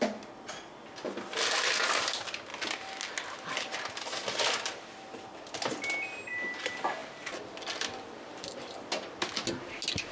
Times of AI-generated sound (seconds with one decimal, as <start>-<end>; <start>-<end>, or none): 7.0-8.2